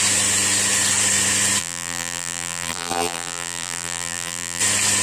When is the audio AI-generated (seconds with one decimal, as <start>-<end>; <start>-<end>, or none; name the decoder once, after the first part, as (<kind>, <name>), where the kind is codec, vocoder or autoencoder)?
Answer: 1.6-4.6 (vocoder, BigVGAN v2)